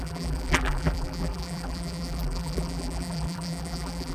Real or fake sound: fake